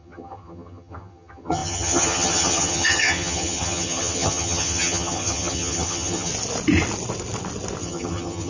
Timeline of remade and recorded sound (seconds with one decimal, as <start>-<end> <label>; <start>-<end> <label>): 0.0-6.3 remade; 6.3-7.8 recorded; 7.8-8.5 remade